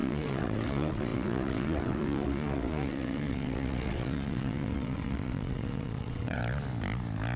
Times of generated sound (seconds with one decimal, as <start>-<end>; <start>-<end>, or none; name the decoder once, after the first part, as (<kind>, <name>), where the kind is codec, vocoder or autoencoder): 0.0-6.4 (vocoder, WaveNeXt)